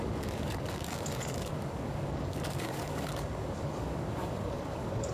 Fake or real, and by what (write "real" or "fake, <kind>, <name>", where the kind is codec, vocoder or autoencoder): fake, codec, DAC